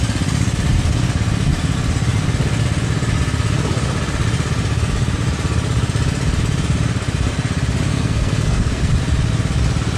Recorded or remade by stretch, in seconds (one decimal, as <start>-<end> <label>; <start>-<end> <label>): 0.0-7.9 recorded; 7.9-8.9 remade; 8.9-10.0 recorded